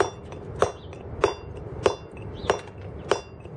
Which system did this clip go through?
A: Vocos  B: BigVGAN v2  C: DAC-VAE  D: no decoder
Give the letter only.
D